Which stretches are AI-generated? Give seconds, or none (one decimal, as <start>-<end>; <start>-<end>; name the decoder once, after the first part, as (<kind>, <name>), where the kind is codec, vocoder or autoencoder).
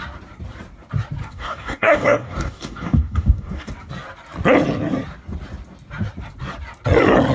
1.2-3.7 (codec, DAC)